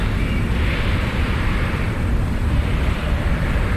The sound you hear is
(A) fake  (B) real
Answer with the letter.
B